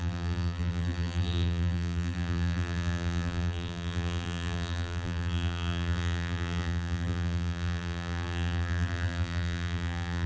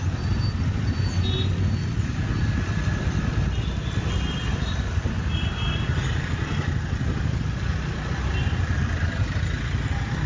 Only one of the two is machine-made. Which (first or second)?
first